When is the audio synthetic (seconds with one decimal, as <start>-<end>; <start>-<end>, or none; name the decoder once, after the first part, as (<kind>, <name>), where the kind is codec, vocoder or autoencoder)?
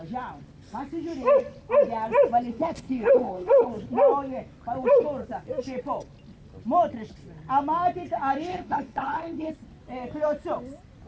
2.5-3.7 (codec, HILCodec); 8.5-9.5